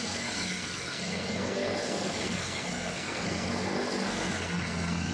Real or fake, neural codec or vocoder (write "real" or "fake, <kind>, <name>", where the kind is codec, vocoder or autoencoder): fake, codec, SNAC